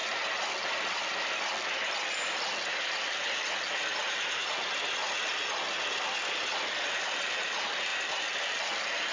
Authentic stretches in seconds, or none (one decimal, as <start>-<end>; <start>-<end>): 0.0-9.1

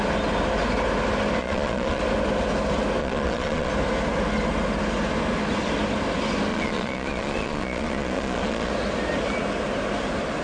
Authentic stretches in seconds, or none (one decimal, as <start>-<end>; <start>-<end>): 0.0-1.4; 2.0-3.0; 3.7-6.5; 8.7-10.4

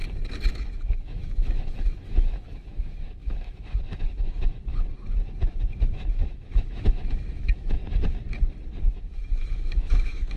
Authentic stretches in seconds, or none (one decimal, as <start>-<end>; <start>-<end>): 0.0-0.5; 4.7-5.8; 7.8-8.9

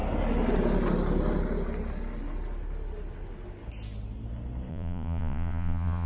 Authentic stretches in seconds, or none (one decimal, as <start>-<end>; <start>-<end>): 0.0-4.7

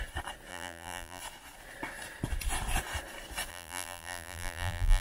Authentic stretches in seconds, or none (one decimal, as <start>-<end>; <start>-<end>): 0.0-0.5; 1.2-3.5

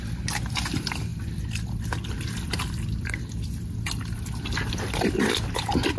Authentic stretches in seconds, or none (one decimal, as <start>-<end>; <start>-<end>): 0.0-6.0